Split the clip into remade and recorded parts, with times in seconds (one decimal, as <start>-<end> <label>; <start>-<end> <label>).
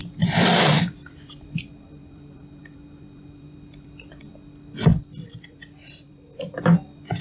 0.0-4.3 remade; 4.3-4.9 recorded; 4.9-6.6 remade; 6.6-7.2 recorded